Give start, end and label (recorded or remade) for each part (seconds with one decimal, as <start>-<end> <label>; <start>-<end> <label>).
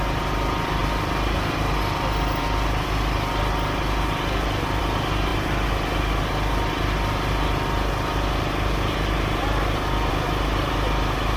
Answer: 0.0-11.4 recorded